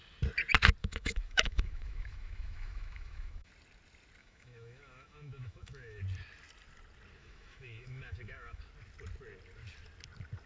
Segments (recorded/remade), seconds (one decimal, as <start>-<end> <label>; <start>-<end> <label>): 0.0-0.8 recorded; 0.8-3.5 remade; 3.5-4.2 recorded; 4.2-6.0 remade; 6.0-7.2 recorded; 7.2-8.6 remade; 8.6-10.5 recorded